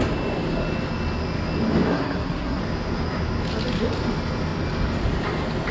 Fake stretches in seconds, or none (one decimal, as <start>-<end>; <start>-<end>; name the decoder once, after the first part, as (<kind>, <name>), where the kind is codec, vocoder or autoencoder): 1.9-2.6 (codec, SNAC)